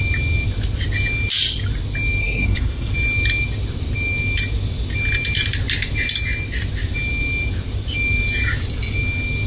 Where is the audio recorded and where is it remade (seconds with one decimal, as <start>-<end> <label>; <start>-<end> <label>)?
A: 0.0-2.2 recorded; 2.2-2.9 remade; 2.9-9.5 recorded